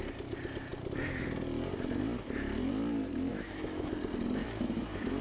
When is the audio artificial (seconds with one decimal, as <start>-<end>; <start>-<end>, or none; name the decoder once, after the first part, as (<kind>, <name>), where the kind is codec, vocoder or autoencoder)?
3.3-3.9 (autoencoder, DAC-VAE); 4.4-5.2